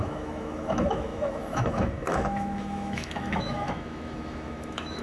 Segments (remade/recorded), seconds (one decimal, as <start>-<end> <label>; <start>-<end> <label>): 0.0-5.0 remade